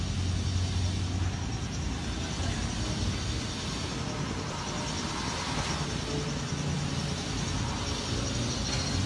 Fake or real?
real